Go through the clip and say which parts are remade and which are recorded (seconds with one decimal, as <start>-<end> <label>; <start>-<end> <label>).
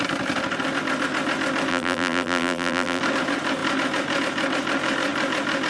0.0-1.7 recorded; 1.7-3.0 remade; 3.0-5.7 recorded